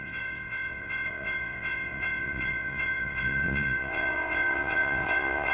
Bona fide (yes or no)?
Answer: no